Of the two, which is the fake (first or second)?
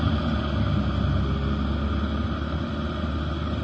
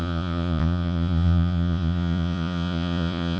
second